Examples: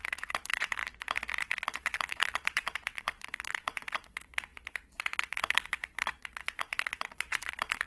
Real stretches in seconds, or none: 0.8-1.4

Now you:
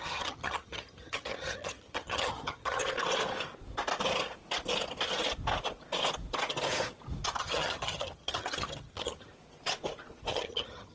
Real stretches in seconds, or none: 2.8-7.4; 9.3-10.3

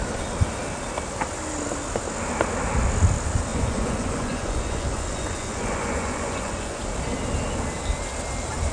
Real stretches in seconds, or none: 0.0-3.5; 6.8-8.7